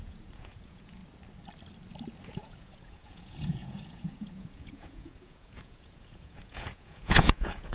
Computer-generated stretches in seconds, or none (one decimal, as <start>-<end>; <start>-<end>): 0.0-1.0; 2.3-7.7